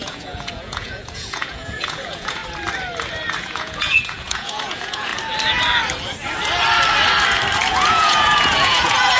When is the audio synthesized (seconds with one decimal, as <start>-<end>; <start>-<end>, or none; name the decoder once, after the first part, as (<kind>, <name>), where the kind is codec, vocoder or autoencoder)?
0.0-2.4 (vocoder, Vocos); 3.4-5.1; 7.7-9.2